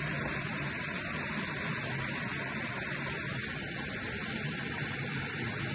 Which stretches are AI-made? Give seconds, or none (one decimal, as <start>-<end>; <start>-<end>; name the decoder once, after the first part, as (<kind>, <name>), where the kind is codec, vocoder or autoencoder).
none